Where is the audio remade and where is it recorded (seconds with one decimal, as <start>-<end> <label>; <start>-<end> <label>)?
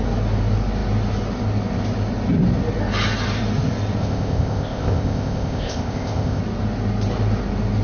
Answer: 0.0-4.0 recorded; 4.0-6.4 remade; 6.4-7.8 recorded